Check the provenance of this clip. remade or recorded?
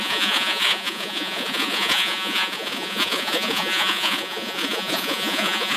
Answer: remade